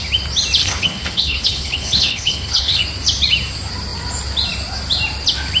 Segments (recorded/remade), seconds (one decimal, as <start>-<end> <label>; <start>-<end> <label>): 0.0-0.6 recorded; 0.6-2.8 remade; 2.8-5.6 recorded